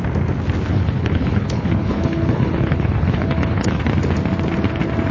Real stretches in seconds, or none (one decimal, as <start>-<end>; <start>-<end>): 0.0-0.7; 3.8-5.1